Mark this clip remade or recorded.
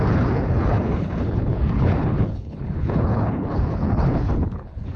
remade